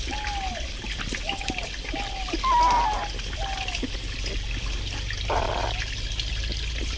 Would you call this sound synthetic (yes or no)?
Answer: no